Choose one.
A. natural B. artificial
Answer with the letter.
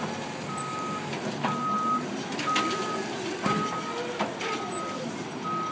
A